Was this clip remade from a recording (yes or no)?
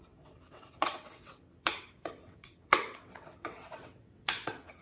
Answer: yes